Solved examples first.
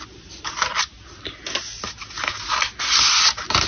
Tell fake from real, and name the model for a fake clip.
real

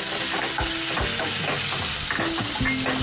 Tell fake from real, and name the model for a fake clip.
real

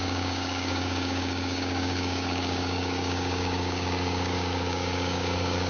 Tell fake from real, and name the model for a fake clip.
fake, codec, DAC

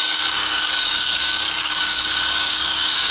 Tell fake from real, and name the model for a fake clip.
fake, codec, DAC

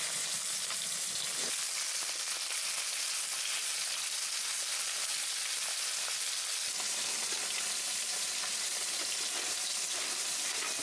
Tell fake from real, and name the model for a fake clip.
real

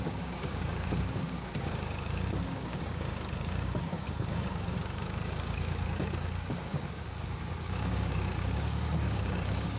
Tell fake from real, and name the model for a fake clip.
fake, codec, DAC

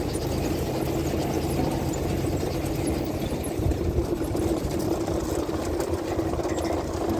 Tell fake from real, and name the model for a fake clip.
real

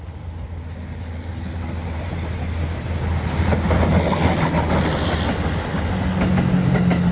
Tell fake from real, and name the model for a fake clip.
real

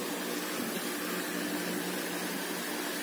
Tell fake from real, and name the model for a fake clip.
real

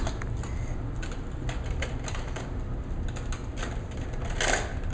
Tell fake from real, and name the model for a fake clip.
real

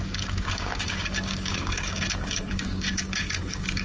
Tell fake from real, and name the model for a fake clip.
fake, codec, DAC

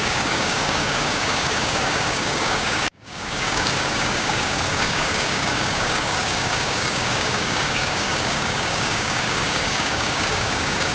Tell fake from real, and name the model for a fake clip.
fake, codec, DAC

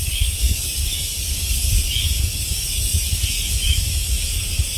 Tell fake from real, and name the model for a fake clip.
fake, codec, DAC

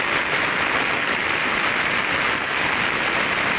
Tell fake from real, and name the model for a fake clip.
real